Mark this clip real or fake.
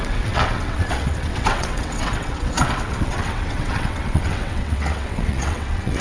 fake